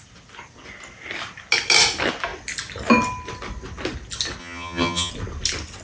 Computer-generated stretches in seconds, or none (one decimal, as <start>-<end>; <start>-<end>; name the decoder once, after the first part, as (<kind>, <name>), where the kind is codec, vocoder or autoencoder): 4.4-5.1 (vocoder, HiFi-GAN)